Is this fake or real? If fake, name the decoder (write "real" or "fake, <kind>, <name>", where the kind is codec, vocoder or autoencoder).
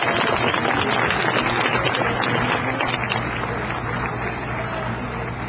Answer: real